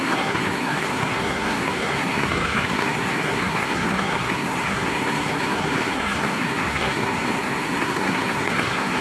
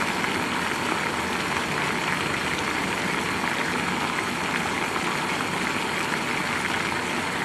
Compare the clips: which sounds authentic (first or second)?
second